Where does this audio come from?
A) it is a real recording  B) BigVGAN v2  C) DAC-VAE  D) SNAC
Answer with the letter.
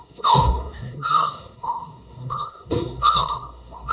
D